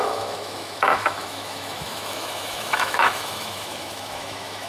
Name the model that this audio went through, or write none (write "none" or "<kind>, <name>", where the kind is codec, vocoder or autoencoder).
autoencoder, DAC-VAE